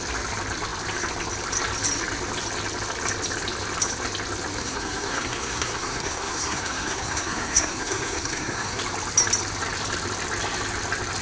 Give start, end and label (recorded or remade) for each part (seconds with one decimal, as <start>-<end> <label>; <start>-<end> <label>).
0.0-4.6 recorded; 4.6-8.8 remade; 8.8-11.2 recorded